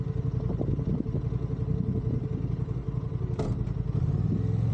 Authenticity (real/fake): real